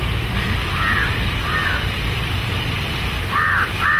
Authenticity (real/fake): fake